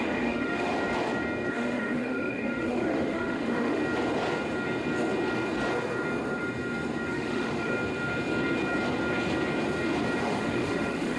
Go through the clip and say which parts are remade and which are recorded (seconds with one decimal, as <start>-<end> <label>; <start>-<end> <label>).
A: 0.0-0.7 remade; 0.7-1.5 recorded; 1.5-3.8 remade; 3.8-7.1 recorded; 7.1-7.7 remade; 7.7-10.2 recorded; 10.2-11.2 remade